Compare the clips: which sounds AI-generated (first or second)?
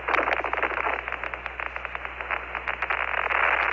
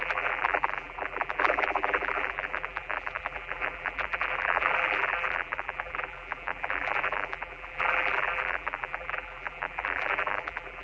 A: second